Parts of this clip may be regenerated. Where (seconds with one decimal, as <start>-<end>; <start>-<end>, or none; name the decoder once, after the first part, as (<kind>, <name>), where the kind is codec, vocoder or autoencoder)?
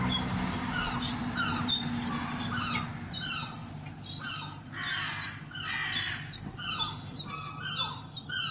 none